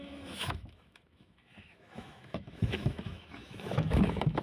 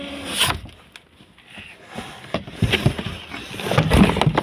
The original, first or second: second